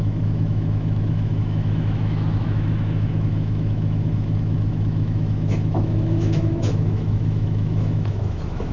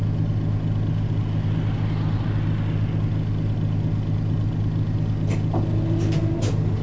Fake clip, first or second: first